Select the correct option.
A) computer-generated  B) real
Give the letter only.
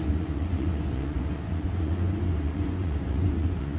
A